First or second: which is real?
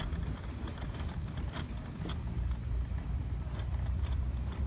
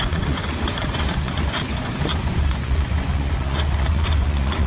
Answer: first